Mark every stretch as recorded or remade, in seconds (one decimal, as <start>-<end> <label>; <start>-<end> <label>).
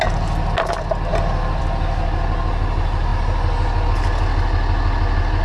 0.0-5.4 recorded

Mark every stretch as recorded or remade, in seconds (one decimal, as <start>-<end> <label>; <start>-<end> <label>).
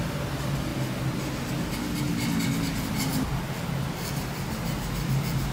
0.0-5.5 recorded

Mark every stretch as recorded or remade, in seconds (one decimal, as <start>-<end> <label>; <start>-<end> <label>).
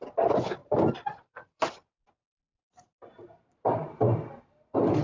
0.0-0.6 recorded; 0.6-1.7 remade; 1.7-2.2 recorded; 2.2-4.4 remade; 4.4-5.0 recorded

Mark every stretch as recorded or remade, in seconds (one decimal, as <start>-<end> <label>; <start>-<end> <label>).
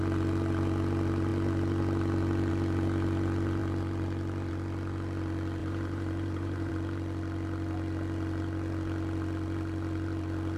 0.0-5.6 recorded; 5.6-6.7 remade; 6.7-10.6 recorded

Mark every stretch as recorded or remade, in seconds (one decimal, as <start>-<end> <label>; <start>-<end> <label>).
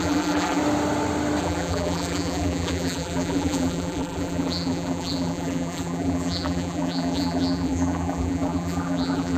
0.0-0.6 remade; 0.6-1.4 recorded; 1.4-9.4 remade